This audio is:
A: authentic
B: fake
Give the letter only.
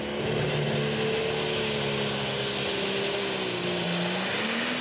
A